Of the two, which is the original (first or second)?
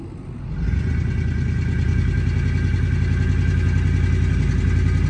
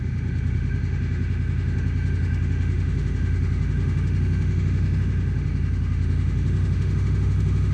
first